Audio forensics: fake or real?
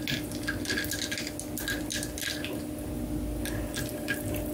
real